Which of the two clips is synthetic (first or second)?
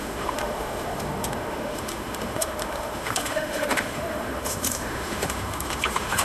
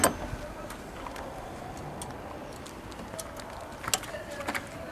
first